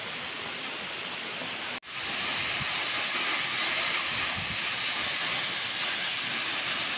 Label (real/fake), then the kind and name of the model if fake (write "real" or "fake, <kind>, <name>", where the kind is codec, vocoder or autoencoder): real